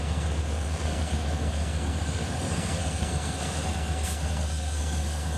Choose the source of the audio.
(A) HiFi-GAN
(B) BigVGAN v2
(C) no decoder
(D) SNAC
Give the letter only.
D